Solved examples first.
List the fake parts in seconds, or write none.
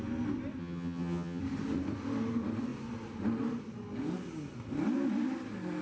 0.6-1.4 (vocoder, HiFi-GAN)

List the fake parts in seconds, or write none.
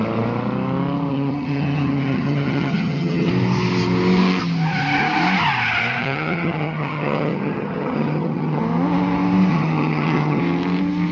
1.1-3.3 (vocoder, HiFi-GAN); 6.0-8.6; 9.5-10.4